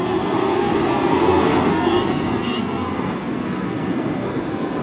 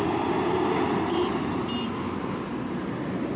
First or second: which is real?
second